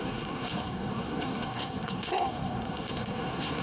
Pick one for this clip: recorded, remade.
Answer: remade